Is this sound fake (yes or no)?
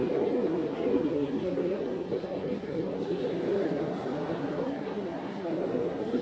yes